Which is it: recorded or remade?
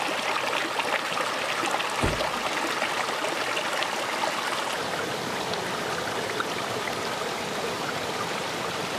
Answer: recorded